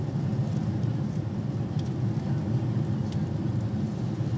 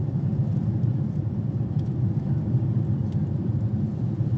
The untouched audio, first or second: first